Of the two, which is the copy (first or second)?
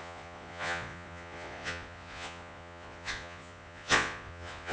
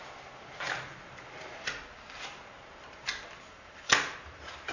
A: first